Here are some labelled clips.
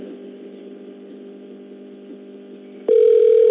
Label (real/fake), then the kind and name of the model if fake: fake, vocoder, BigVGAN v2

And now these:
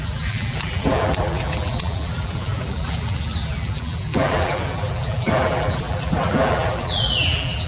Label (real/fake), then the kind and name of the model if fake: fake, vocoder, BigVGAN v2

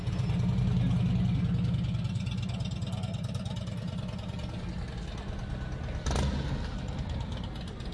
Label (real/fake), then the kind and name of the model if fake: real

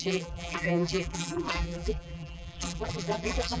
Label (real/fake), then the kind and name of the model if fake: fake, vocoder, BigVGAN v2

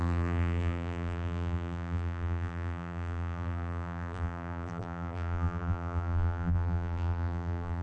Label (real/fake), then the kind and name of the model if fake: fake, vocoder, BigVGAN v2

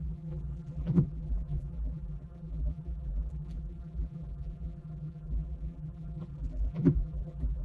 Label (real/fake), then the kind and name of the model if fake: fake, vocoder, BigVGAN v2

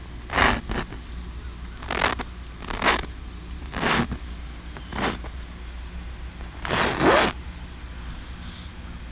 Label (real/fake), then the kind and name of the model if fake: real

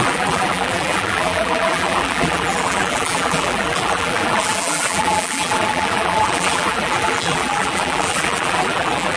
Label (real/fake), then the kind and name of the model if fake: fake, vocoder, BigVGAN v2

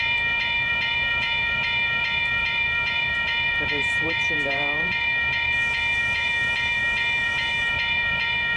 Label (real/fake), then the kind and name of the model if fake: fake, vocoder, BigVGAN v2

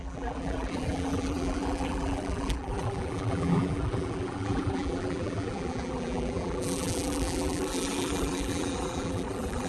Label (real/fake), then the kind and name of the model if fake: fake, vocoder, BigVGAN v2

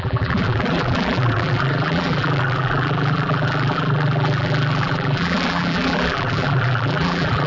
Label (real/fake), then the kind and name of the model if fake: fake, vocoder, BigVGAN v2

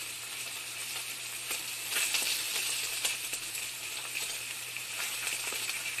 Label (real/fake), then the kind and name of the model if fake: fake, vocoder, BigVGAN v2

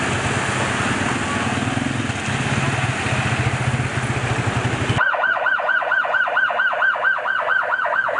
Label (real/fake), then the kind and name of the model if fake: real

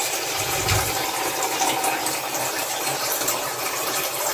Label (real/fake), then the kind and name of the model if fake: fake, vocoder, BigVGAN v2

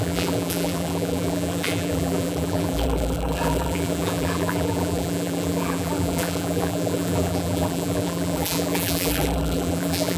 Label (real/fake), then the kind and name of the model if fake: fake, vocoder, BigVGAN v2